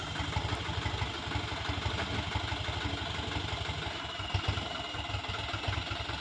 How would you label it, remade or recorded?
recorded